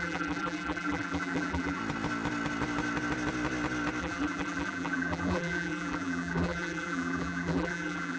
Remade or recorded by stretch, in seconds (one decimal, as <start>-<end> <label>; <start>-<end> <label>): 0.0-1.8 remade; 1.8-4.0 recorded; 4.0-8.2 remade